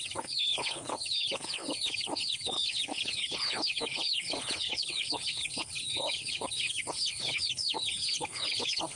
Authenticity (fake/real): fake